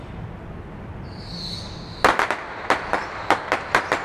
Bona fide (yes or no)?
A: yes